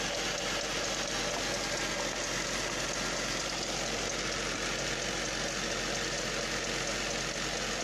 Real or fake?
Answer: real